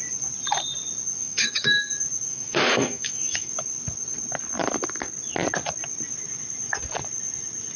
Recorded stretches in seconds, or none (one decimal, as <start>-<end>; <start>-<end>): 0.0-1.2; 1.9-2.3; 3.5-7.8